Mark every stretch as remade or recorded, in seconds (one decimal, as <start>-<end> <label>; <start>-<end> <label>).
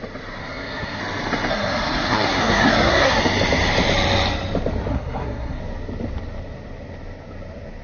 0.0-0.4 recorded; 0.4-1.0 remade; 1.0-1.5 recorded; 1.5-3.2 remade; 3.2-4.9 recorded; 4.9-5.6 remade; 5.6-7.8 recorded